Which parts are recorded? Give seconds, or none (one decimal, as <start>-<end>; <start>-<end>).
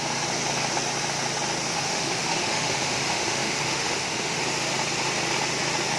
0.0-1.7; 4.4-6.0